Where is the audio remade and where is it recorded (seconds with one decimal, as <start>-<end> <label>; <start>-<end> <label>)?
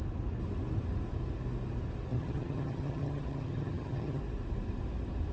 0.0-2.1 recorded; 2.1-4.2 remade; 4.2-5.3 recorded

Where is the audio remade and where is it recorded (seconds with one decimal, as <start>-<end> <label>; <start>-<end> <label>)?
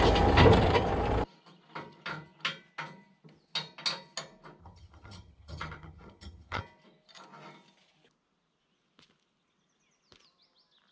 0.0-4.6 recorded; 4.6-6.6 remade; 6.6-10.9 recorded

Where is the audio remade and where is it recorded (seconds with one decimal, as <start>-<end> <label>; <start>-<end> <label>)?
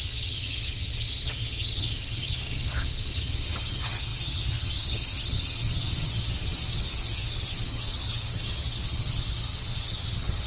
0.0-10.5 remade